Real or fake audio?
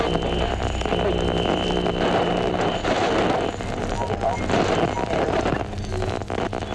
real